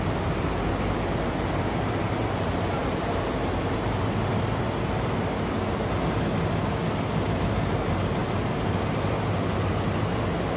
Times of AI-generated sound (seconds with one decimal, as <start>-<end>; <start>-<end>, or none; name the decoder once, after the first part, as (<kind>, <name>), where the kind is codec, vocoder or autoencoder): none